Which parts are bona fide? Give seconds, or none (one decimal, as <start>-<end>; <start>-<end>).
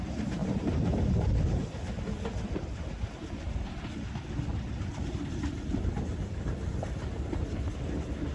0.0-0.4; 1.6-8.3